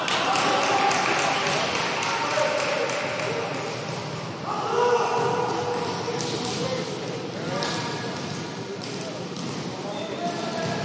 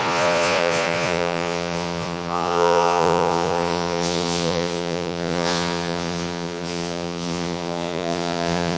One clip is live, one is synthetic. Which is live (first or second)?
first